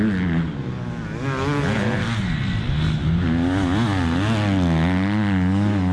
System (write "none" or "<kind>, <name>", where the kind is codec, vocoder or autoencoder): none